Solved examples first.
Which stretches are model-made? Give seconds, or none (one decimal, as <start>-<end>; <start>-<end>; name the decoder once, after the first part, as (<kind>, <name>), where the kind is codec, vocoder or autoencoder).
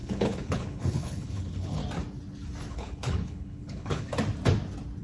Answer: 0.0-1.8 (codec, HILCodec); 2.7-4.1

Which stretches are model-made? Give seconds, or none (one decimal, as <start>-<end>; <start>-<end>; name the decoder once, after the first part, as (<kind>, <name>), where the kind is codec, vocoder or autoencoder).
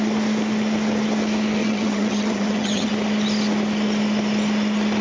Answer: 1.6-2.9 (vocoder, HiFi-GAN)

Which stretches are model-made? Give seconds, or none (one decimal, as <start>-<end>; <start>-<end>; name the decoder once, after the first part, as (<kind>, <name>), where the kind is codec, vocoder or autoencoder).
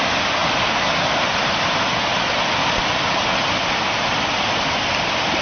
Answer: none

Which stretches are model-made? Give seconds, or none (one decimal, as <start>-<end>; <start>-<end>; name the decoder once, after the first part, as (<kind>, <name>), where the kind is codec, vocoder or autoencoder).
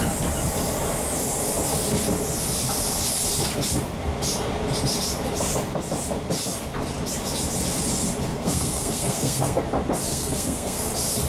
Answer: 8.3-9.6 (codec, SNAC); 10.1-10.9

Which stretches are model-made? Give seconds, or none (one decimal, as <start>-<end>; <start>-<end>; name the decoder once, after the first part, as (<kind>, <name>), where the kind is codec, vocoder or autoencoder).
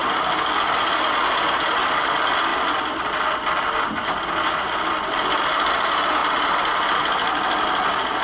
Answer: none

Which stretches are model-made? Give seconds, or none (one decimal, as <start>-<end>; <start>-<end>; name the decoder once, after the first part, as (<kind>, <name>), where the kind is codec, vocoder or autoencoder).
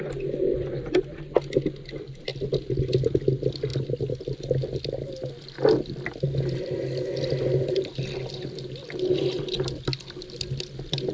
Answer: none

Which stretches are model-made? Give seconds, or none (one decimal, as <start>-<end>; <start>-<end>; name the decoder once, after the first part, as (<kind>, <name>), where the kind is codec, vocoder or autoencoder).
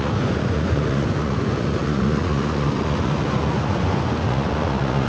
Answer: 0.0-5.1 (vocoder, Vocos)